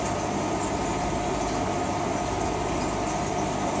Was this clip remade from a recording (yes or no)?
no